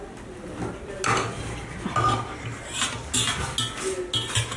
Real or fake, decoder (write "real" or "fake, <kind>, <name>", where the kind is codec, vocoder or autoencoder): real